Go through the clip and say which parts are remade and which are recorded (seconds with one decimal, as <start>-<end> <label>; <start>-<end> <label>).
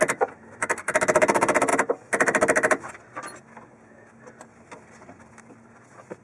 0.0-6.2 recorded